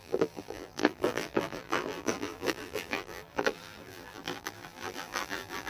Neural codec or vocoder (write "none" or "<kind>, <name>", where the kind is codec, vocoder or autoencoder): vocoder, BigVGAN v2